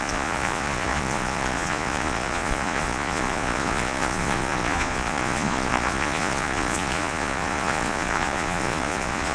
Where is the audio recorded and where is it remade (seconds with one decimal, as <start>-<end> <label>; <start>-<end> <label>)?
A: 0.0-9.3 remade